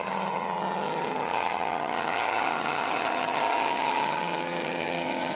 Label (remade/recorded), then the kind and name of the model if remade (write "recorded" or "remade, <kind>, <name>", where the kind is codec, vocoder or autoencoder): remade, vocoder, HiFi-GAN